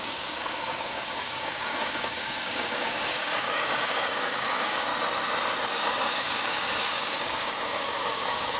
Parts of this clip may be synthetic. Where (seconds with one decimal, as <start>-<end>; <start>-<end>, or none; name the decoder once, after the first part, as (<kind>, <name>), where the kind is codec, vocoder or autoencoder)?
0.0-4.9 (codec, DAC); 5.7-8.6